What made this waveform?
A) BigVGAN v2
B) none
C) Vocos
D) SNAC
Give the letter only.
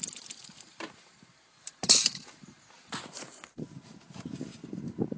B